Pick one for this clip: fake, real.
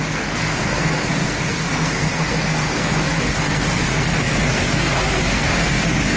fake